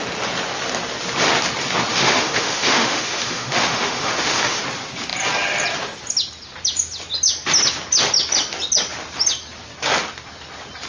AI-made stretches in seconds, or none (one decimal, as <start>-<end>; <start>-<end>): 1.9-4.6